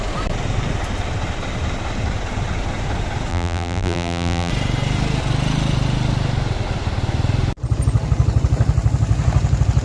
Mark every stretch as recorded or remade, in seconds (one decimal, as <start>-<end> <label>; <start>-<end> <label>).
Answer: 0.0-3.3 recorded; 3.3-4.5 remade; 4.5-9.8 recorded